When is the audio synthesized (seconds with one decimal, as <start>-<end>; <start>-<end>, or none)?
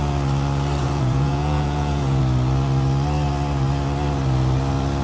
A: 0.8-2.2